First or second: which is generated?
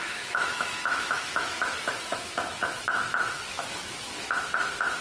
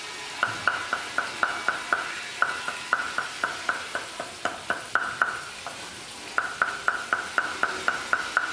first